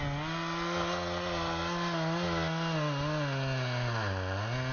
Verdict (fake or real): real